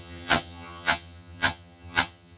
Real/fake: fake